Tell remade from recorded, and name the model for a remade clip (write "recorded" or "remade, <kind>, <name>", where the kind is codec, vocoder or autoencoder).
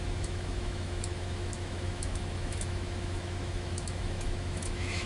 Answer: remade, autoencoder, DAC-VAE